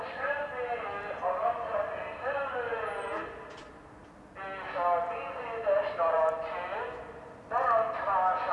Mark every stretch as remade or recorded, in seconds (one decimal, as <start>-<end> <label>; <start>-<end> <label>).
0.0-2.7 recorded; 2.7-3.2 remade; 3.2-8.5 recorded